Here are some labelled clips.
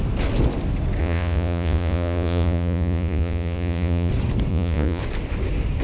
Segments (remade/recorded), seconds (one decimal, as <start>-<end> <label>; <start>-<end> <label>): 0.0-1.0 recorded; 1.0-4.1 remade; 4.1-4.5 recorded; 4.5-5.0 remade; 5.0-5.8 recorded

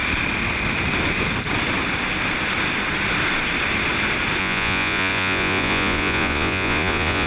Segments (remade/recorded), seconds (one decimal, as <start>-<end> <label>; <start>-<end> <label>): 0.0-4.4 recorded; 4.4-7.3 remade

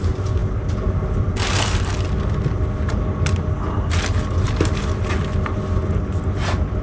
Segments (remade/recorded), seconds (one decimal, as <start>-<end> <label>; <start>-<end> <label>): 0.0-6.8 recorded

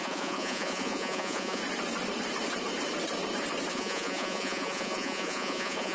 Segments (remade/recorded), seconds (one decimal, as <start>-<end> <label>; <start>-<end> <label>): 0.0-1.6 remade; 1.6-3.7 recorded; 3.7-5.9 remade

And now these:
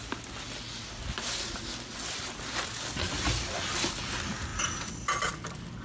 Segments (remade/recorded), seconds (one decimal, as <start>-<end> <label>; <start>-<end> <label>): 0.0-5.8 recorded

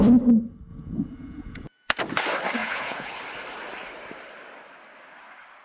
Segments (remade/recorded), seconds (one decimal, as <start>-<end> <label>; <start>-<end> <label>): 0.0-0.7 recorded; 0.7-2.0 remade; 2.0-2.6 recorded; 2.6-3.1 remade; 3.1-5.6 recorded